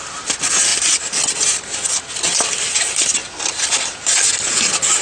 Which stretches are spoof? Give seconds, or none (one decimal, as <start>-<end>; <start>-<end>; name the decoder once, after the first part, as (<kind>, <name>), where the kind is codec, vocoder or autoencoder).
none